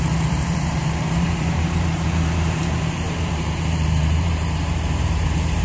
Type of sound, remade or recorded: remade